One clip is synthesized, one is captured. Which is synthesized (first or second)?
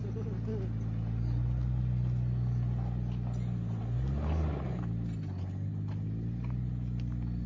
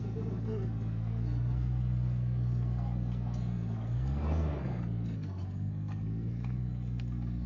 second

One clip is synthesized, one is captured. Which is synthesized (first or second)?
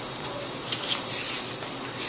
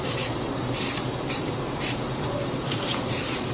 second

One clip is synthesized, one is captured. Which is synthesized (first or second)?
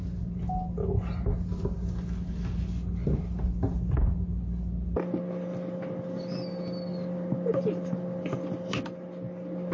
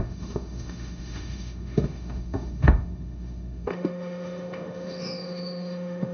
second